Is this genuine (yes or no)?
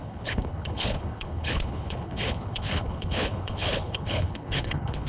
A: no